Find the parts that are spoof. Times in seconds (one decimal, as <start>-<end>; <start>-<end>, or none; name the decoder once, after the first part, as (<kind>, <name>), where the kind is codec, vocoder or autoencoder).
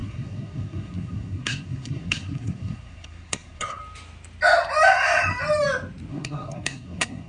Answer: 0.0-3.8 (codec, SNAC); 6.1-7.3